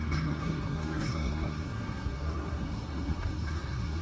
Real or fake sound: fake